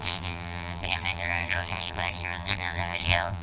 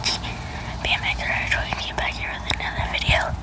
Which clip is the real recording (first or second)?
second